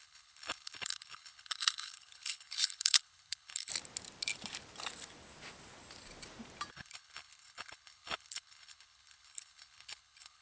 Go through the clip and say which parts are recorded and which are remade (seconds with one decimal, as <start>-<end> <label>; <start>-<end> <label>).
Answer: 0.0-3.7 remade; 3.7-6.7 recorded; 6.7-10.4 remade